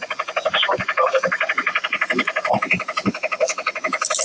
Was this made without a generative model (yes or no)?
yes